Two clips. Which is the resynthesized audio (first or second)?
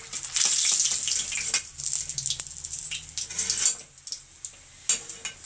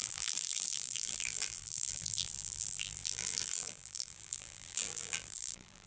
second